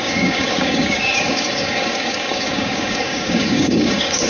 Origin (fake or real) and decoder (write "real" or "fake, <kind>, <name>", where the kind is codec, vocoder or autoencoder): fake, codec, DAC